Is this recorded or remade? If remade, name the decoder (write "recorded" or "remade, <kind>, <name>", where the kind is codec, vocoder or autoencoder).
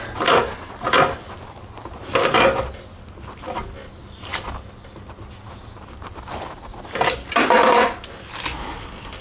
recorded